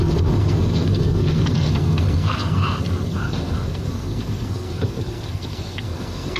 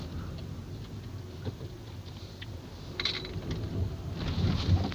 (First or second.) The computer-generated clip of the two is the first